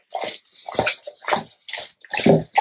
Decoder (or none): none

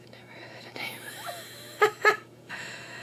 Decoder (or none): autoencoder, DAC-VAE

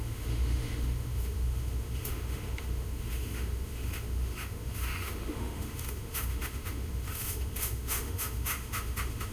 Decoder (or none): autoencoder, DAC-VAE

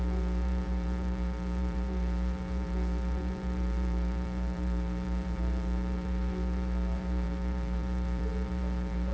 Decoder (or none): vocoder, BigVGAN v2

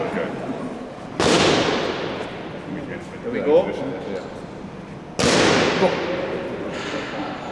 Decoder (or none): none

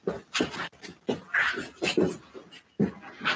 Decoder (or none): none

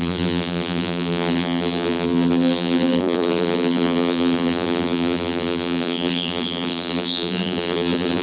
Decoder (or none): vocoder, BigVGAN v2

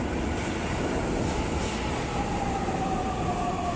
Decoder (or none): none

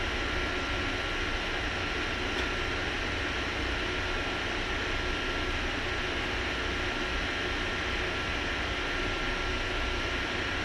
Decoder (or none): none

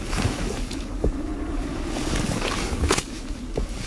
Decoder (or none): codec, DAC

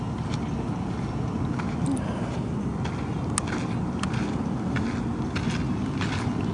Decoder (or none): none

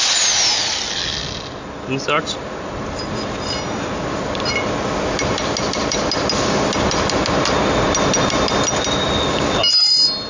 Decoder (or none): none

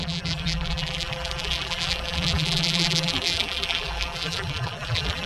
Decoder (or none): vocoder, BigVGAN v2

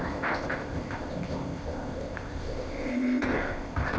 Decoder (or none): codec, ZipCodec